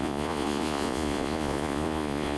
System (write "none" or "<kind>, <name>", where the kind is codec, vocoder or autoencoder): vocoder, Vocos